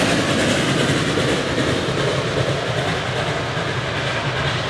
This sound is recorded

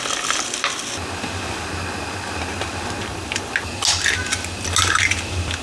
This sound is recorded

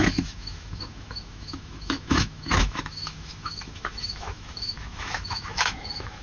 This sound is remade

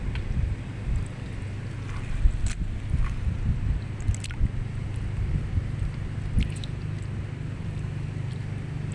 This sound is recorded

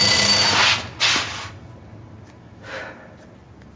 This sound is recorded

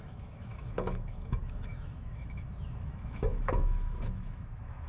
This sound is remade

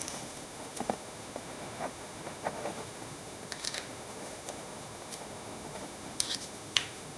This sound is remade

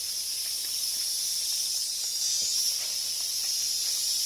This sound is recorded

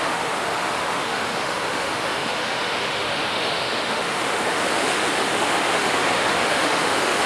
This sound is remade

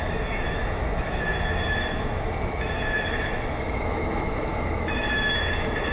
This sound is remade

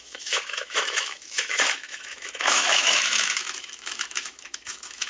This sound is remade